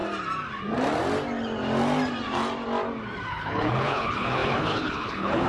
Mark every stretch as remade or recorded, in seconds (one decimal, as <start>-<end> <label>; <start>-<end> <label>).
0.0-3.3 recorded; 3.3-5.5 remade